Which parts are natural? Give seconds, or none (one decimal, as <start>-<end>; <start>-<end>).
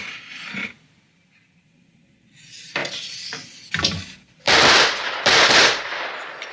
0.0-2.8; 5.5-6.5